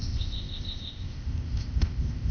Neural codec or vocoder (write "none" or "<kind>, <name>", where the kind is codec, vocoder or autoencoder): codec, ZipCodec